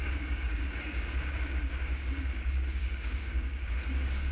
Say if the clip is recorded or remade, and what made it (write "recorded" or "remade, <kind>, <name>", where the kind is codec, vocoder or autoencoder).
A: remade, codec, DAC